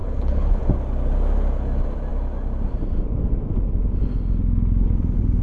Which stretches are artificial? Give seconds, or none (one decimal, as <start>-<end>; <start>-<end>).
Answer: 0.0-0.6